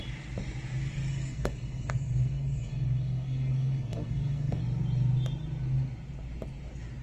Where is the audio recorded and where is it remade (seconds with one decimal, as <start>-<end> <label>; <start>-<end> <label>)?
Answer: 0.0-1.1 recorded; 1.1-4.6 remade; 4.6-7.0 recorded